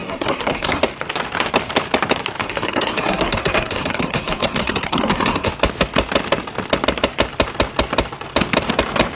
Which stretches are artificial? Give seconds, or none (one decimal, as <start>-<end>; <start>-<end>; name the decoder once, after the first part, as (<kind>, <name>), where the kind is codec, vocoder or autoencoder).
0.0-0.8 (codec, SNAC); 2.4-5.5